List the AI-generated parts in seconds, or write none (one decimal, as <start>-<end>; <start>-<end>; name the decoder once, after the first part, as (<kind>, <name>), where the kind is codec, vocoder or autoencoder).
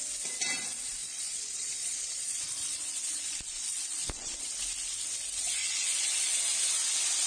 1.0-4.4 (vocoder, Vocos); 5.6-6.4